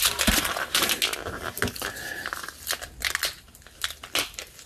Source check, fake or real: real